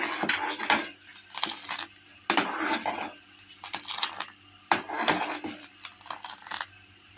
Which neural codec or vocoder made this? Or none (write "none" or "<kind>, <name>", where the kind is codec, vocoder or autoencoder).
none